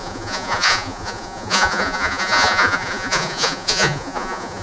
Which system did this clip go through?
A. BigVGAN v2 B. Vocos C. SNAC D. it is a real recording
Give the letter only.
B